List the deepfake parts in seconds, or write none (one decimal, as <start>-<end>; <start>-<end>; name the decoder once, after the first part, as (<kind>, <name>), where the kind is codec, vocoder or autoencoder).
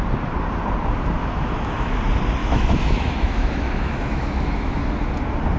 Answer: 1.2-2.0 (autoencoder, DAC-VAE); 2.4-4.8